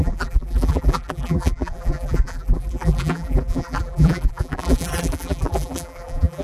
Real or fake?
fake